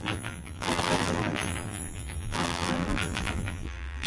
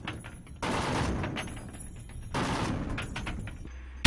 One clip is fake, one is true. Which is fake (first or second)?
first